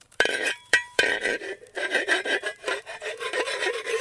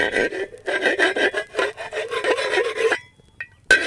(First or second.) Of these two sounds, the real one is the second